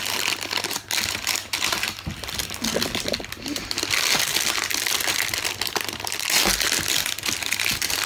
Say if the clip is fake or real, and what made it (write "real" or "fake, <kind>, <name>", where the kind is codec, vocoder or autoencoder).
real